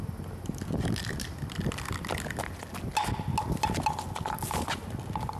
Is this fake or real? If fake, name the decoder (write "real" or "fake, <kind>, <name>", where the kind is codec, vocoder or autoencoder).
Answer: real